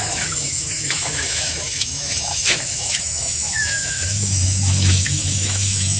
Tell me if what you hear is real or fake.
fake